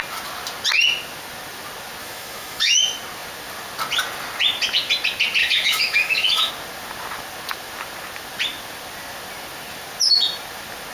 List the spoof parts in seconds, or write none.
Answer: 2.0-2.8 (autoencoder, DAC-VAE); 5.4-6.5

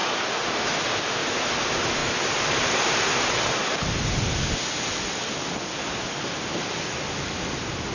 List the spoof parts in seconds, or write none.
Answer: none

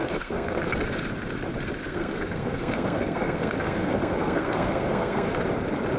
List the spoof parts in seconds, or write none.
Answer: 0.0-0.7 (codec, SNAC); 1.8-5.4

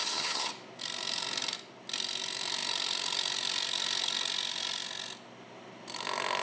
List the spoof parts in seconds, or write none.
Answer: 0.0-0.5 (vocoder, HiFi-GAN)